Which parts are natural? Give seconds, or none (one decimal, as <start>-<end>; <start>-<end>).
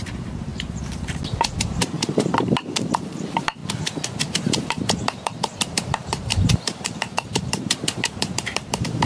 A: 0.5-1.6; 3.6-4.3